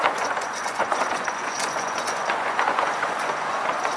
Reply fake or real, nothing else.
fake